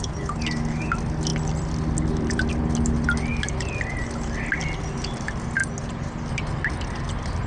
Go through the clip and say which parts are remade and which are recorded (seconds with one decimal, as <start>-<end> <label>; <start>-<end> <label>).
0.0-7.5 recorded